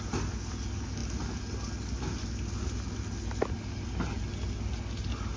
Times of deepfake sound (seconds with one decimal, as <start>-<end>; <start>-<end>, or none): none